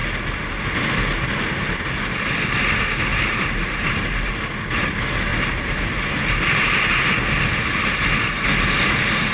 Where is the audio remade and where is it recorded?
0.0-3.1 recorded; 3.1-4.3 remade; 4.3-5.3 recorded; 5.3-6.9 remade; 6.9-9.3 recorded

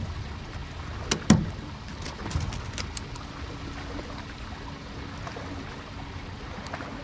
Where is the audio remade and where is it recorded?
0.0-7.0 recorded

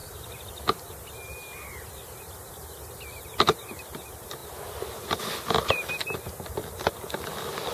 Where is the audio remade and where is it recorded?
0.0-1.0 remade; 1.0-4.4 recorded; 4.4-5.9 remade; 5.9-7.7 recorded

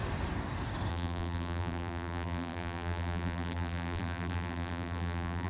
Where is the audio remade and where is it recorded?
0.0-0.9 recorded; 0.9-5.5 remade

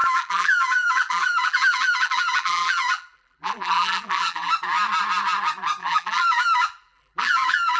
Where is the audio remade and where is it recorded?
0.0-4.5 remade; 4.5-5.8 recorded; 5.8-7.8 remade